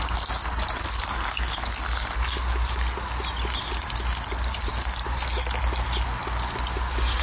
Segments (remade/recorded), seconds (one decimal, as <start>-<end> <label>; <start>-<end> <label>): 0.0-7.2 recorded

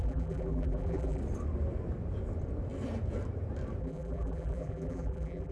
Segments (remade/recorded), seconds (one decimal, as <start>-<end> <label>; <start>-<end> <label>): 0.0-1.2 remade; 1.2-3.8 recorded; 3.8-5.5 remade

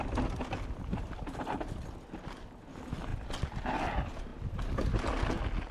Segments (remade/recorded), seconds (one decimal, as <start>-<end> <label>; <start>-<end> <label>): 0.0-5.7 recorded

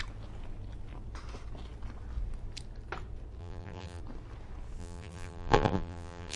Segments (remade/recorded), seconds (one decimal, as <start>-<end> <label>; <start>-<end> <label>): 0.0-3.4 recorded; 3.4-4.0 remade; 4.0-4.8 recorded; 4.8-6.4 remade

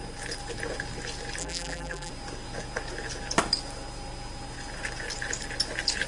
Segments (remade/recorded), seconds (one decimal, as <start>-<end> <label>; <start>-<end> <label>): 0.0-1.4 recorded; 1.4-2.1 remade; 2.1-6.1 recorded